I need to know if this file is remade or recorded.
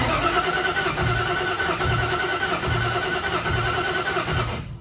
recorded